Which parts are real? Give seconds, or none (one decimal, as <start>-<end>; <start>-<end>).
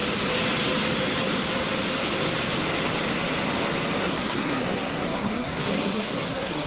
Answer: 0.0-4.0